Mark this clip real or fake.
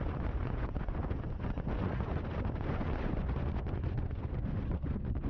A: fake